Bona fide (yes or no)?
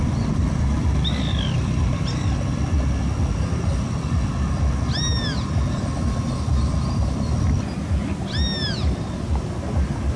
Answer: yes